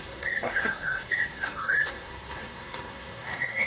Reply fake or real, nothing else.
fake